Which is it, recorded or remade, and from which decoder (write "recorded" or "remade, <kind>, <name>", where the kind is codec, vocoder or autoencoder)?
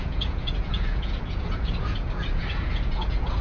remade, vocoder, Vocos